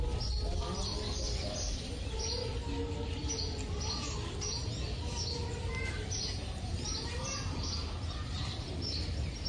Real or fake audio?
real